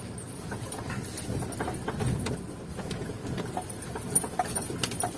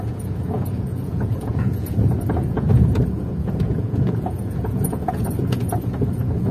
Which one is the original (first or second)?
first